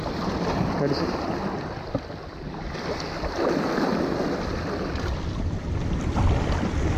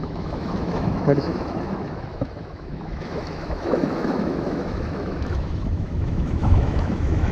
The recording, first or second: first